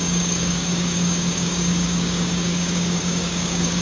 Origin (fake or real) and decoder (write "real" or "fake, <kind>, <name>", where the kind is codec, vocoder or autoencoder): fake, codec, DAC